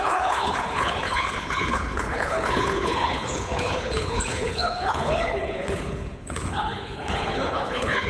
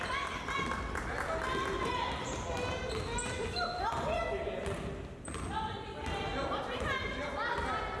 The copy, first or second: first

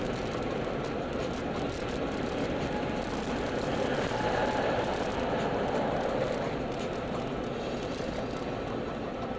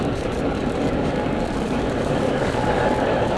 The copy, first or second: second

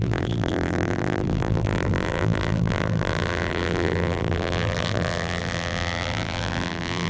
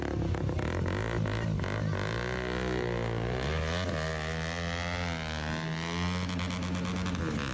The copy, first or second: first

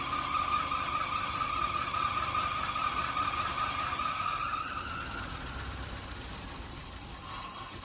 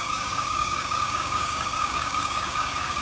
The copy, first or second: second